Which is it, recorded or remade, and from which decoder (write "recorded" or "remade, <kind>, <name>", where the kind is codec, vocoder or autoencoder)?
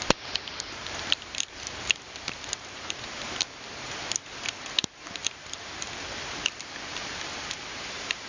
remade, vocoder, BigVGAN v2